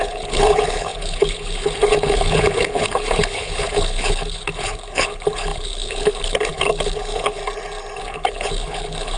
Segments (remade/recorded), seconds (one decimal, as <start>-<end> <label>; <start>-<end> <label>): 0.0-7.4 remade; 7.4-8.0 recorded; 8.0-9.2 remade